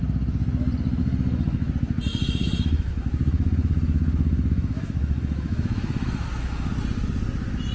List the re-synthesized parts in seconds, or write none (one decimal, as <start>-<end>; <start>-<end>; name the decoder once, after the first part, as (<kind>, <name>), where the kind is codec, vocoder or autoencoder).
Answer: 1.0-1.7 (autoencoder, DAC-VAE); 2.1-6.7